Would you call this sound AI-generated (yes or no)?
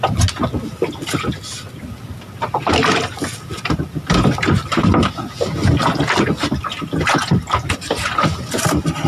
no